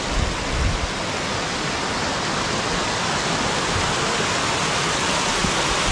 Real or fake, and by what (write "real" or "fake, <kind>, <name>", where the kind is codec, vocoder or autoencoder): real